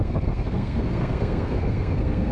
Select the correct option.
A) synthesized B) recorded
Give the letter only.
A